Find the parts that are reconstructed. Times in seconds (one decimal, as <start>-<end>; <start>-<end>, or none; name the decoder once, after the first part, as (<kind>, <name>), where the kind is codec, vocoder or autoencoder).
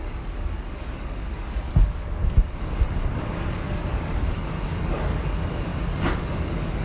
0.0-2.2 (codec, DAC); 3.1-6.8